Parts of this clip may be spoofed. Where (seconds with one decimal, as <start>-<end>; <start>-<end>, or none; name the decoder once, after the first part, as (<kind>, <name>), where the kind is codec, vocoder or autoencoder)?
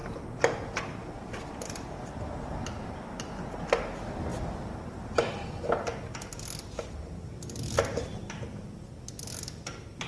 none